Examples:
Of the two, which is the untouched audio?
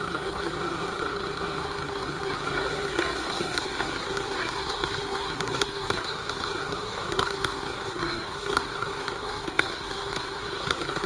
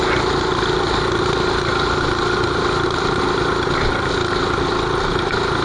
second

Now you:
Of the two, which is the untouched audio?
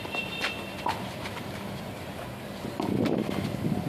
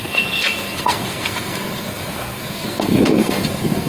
first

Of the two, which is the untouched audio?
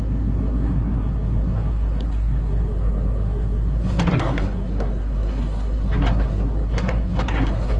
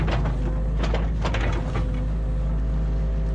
second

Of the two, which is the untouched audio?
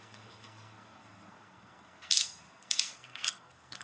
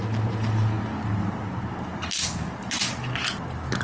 second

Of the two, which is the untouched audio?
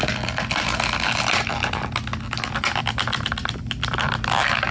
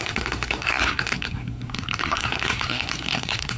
first